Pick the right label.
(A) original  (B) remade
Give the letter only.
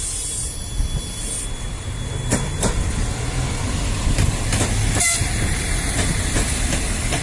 A